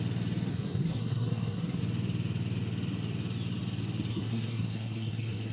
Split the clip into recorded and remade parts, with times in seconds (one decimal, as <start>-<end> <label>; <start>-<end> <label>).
0.0-0.5 recorded; 0.5-1.8 remade; 1.8-4.1 recorded; 4.1-5.5 remade